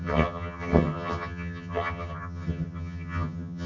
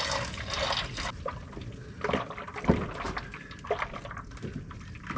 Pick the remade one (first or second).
first